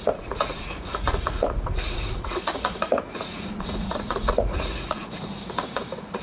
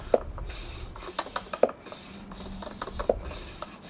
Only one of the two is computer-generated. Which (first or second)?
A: first